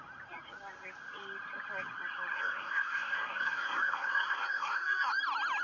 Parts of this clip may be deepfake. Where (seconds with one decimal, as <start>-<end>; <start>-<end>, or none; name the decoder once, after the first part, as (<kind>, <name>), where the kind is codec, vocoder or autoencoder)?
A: 2.3-5.1 (codec, SNAC)